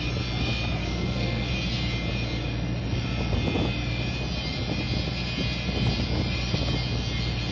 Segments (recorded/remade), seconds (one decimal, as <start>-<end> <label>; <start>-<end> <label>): 0.0-0.8 recorded; 0.8-1.5 remade; 1.5-7.5 recorded